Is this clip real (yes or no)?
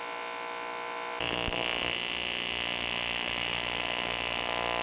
yes